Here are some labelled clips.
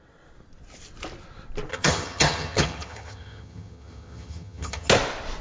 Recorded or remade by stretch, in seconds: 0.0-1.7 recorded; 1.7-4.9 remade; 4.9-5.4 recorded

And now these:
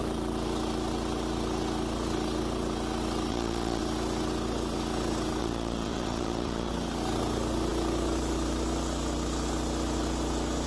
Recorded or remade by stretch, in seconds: 0.0-3.3 recorded; 3.3-3.8 remade; 3.8-5.4 recorded; 5.4-6.7 remade; 6.7-10.7 recorded

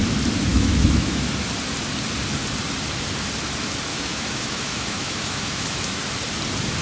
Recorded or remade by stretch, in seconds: 0.0-0.5 recorded; 0.5-1.3 remade; 1.3-3.9 recorded; 3.9-6.0 remade; 6.0-6.8 recorded

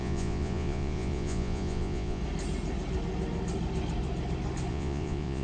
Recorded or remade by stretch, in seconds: 0.0-2.2 remade; 2.2-4.7 recorded; 4.7-5.4 remade

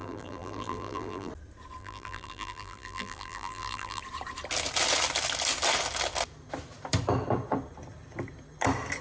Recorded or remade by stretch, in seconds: 0.0-1.3 remade; 1.3-1.8 recorded; 1.8-4.0 remade; 4.0-9.0 recorded

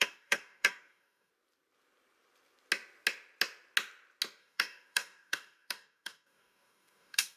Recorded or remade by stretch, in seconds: 0.0-1.3 remade; 1.3-4.4 recorded; 4.4-7.4 remade

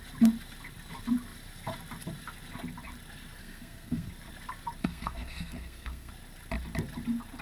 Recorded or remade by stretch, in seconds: 0.0-3.4 recorded; 3.4-4.1 remade; 4.1-4.8 recorded; 4.8-6.1 remade; 6.1-7.4 recorded